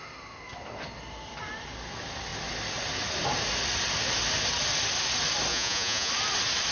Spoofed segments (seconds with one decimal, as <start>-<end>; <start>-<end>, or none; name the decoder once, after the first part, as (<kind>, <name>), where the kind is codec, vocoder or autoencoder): 5.5-6.1 (vocoder, Vocos)